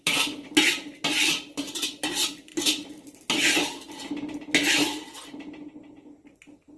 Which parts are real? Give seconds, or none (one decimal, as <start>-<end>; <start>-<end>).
0.0-6.8